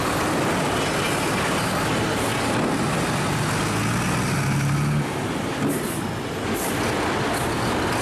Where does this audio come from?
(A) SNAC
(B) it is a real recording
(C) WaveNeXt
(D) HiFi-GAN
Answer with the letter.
B